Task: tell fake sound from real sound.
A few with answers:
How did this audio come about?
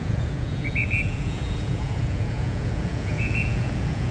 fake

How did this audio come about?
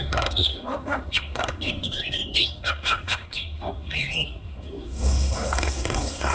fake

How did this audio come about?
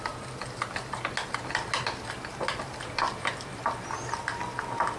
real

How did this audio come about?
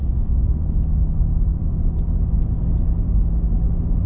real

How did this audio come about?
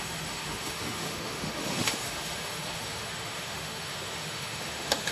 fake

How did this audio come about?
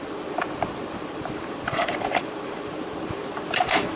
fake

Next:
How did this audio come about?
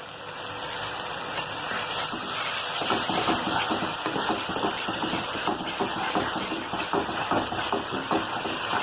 real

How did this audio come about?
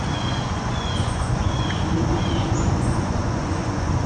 fake